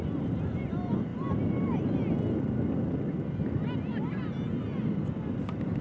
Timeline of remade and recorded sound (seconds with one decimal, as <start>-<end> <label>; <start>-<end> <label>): 0.0-5.8 recorded

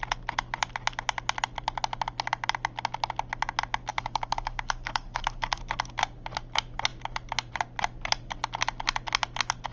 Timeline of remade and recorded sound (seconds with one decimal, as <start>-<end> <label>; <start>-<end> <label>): 0.0-3.9 recorded; 3.9-5.6 remade; 5.6-9.7 recorded

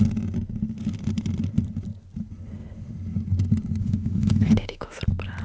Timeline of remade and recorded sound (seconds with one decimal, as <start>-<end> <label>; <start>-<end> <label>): 0.0-3.8 recorded; 3.8-5.0 remade; 5.0-5.4 recorded